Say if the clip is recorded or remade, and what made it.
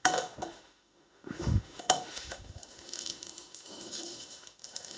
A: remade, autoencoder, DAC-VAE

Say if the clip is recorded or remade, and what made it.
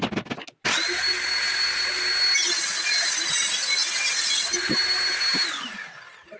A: recorded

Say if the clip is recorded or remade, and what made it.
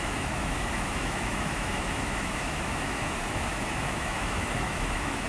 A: remade, autoencoder, DAC-VAE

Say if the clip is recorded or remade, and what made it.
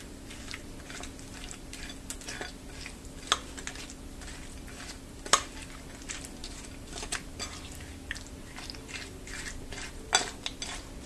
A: recorded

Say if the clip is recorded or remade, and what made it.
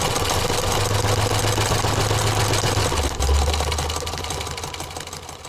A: recorded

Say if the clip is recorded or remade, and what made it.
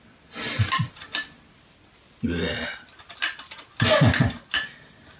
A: recorded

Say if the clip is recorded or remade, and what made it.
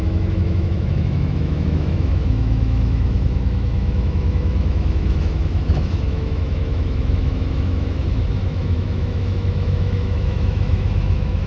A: remade, autoencoder, DAC-VAE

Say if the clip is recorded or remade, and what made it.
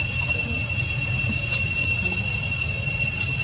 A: recorded